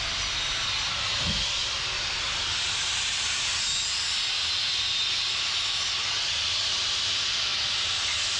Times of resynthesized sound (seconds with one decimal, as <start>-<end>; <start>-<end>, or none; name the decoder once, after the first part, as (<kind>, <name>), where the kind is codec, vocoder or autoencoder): none